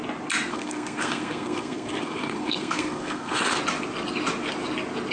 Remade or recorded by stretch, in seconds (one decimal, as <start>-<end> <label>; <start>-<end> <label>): 0.0-0.5 recorded; 0.5-3.6 remade; 3.6-5.1 recorded